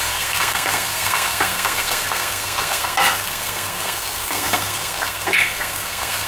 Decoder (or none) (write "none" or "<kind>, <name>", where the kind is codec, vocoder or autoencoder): codec, SNAC